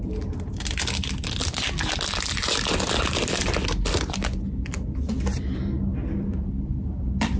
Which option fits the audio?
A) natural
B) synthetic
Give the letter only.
A